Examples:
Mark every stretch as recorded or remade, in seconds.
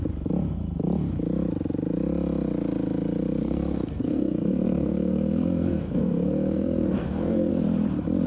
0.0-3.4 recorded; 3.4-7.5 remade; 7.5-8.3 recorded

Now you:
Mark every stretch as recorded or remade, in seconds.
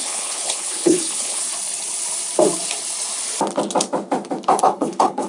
0.0-1.4 remade; 1.4-4.6 recorded; 4.6-5.3 remade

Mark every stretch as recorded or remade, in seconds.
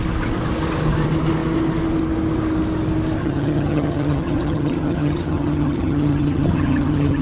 0.0-3.2 recorded; 3.2-7.2 remade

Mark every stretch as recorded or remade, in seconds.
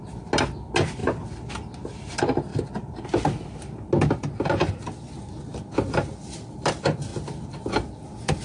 0.0-8.4 recorded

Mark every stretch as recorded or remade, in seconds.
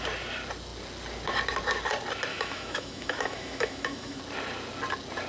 0.0-2.3 recorded; 2.3-4.2 remade; 4.2-5.3 recorded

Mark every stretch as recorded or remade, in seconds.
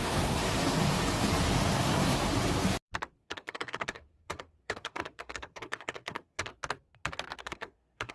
0.0-0.4 remade; 0.4-1.8 recorded; 1.8-2.2 remade; 2.2-3.2 recorded; 3.2-6.5 remade; 6.5-7.4 recorded; 7.4-8.1 remade